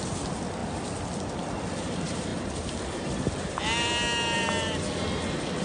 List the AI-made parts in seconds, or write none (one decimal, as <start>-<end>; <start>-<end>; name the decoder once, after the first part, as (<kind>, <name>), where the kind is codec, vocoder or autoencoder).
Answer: none